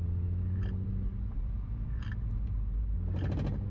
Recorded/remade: recorded